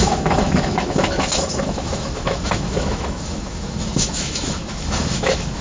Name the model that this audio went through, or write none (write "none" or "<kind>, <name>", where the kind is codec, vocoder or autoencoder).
autoencoder, DAC-VAE